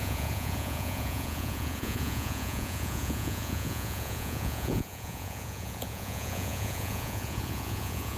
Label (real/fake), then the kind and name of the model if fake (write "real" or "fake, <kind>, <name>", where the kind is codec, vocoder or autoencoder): fake, vocoder, Vocos